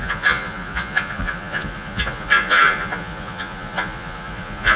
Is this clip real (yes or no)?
no